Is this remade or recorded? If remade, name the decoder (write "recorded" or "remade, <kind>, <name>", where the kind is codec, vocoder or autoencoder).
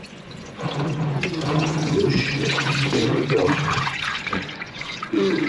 remade, vocoder, Vocos